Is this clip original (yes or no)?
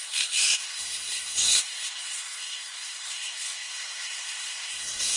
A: no